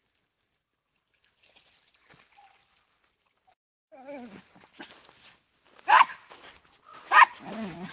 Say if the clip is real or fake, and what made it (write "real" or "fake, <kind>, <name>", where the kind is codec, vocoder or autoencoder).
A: real